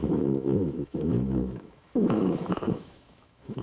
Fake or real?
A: fake